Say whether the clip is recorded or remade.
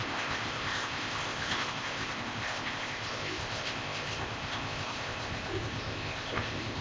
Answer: remade